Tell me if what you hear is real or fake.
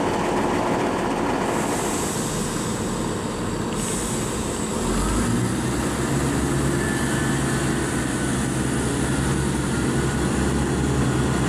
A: real